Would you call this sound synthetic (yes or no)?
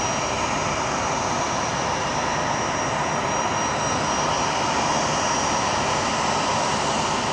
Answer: no